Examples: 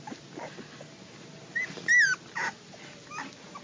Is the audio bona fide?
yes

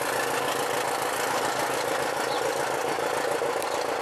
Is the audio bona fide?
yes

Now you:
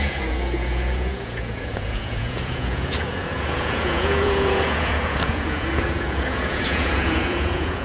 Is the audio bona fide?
no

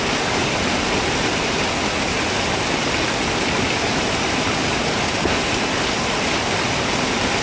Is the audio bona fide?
yes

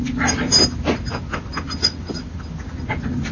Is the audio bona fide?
yes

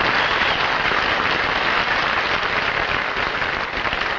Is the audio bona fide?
yes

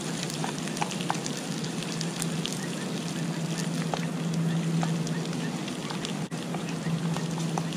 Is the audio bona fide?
yes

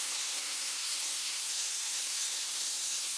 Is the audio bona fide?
no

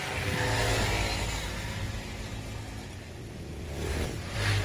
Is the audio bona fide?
yes